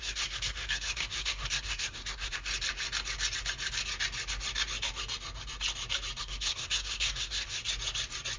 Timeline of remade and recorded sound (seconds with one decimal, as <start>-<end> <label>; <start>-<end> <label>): 0.0-2.5 remade; 2.5-6.2 recorded; 6.2-7.6 remade; 7.6-8.4 recorded